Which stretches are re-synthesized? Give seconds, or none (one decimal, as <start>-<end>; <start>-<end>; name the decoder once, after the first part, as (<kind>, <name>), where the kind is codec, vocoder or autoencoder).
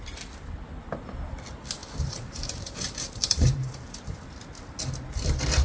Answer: 1.8-4.0 (vocoder, BigVGAN v2)